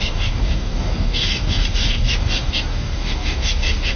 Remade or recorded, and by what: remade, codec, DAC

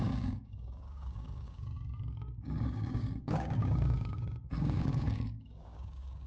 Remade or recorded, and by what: remade, codec, DAC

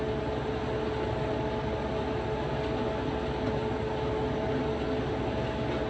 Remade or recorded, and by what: recorded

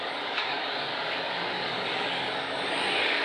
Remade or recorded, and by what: remade, codec, DAC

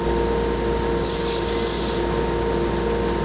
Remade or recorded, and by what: recorded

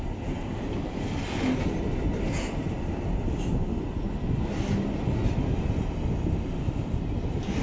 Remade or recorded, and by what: recorded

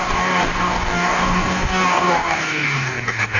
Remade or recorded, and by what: remade, codec, DAC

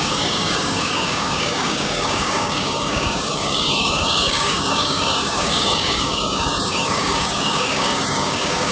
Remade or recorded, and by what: remade, codec, DAC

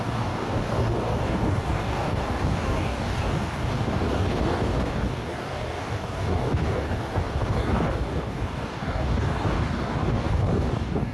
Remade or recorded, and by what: remade, codec, DAC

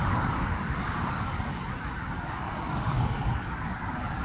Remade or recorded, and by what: remade, codec, DAC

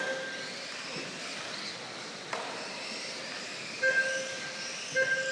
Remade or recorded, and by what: recorded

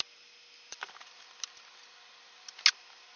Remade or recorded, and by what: recorded